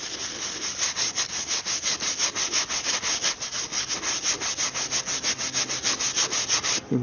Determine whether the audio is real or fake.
real